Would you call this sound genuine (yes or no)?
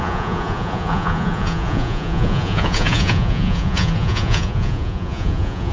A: no